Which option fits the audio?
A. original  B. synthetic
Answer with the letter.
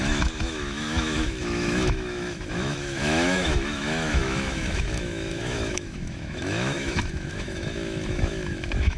B